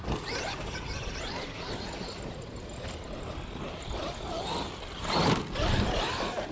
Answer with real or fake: real